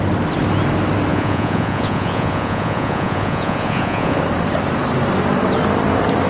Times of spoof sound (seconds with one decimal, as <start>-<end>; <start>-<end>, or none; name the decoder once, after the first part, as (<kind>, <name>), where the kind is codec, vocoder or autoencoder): 1.1-4.2 (vocoder, Vocos)